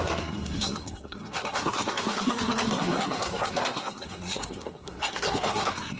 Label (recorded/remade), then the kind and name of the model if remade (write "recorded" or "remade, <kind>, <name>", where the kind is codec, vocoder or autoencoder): remade, codec, SNAC